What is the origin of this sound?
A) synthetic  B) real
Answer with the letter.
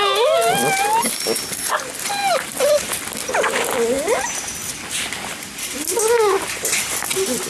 B